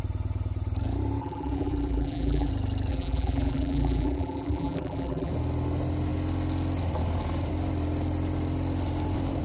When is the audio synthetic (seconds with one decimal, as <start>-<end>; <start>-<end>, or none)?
1.2-2.5; 2.9-5.3